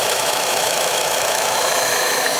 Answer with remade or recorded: remade